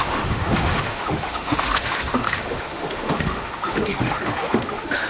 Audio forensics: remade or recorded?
remade